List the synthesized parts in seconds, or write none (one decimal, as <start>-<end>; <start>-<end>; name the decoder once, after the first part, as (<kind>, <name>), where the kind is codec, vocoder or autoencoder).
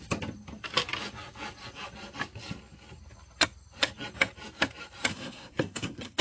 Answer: 5.1-6.2 (codec, SNAC)